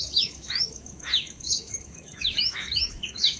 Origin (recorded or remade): remade